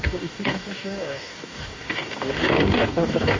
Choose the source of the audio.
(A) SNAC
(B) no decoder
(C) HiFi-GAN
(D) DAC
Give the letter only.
D